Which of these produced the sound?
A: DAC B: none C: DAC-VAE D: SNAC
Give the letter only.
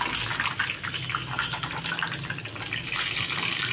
B